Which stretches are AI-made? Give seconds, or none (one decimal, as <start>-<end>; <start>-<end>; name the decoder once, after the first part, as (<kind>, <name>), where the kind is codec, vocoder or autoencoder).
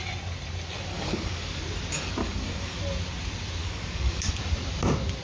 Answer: 0.9-1.6 (codec, DAC); 2.2-2.8; 3.6-4.3